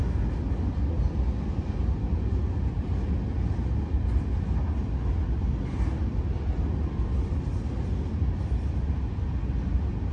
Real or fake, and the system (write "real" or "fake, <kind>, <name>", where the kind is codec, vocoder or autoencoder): real